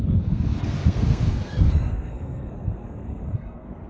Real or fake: fake